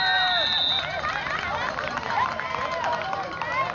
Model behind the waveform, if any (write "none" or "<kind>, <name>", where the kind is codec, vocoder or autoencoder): none